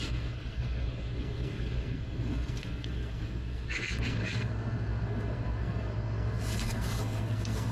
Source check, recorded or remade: remade